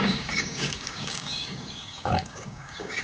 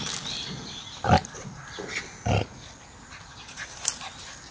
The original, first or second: second